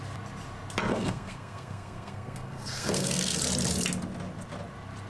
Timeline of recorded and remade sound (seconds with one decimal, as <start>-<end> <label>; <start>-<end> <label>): 0.0-0.9 recorded; 0.9-3.4 remade; 3.4-5.1 recorded